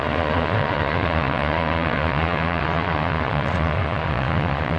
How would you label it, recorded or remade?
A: remade